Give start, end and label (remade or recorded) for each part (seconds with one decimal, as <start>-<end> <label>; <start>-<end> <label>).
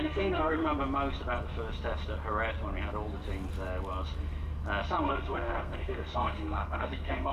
0.0-0.6 remade; 0.6-5.0 recorded; 5.0-7.3 remade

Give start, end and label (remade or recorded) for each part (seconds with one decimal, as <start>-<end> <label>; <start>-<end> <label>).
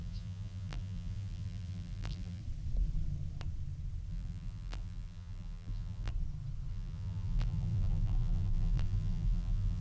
0.0-2.4 remade; 2.4-4.1 recorded; 4.1-6.1 remade; 6.1-6.7 recorded; 6.7-9.8 remade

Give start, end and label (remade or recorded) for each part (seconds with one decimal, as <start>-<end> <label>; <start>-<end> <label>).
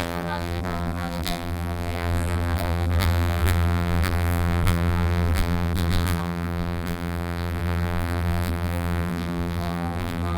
0.0-10.4 remade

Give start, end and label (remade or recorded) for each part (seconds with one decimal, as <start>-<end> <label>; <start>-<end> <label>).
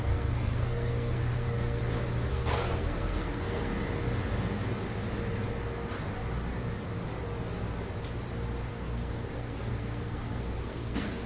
0.0-1.8 remade; 1.8-2.3 recorded; 2.3-3.7 remade; 3.7-8.7 recorded; 8.7-11.3 remade